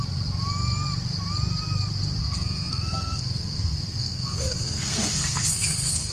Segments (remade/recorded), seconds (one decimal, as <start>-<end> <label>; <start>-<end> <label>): 0.0-2.2 recorded; 2.2-6.1 remade